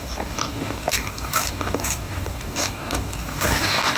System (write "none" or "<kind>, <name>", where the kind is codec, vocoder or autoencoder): codec, DAC